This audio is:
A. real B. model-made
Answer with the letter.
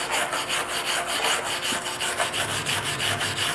A